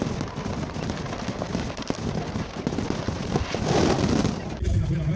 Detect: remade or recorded recorded